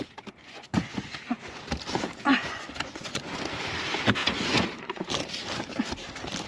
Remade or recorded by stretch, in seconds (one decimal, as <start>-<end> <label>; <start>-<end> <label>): 0.0-0.4 recorded; 0.4-1.6 remade; 1.6-2.3 recorded; 2.3-3.4 remade; 3.4-4.2 recorded; 4.2-5.1 remade; 5.1-6.5 recorded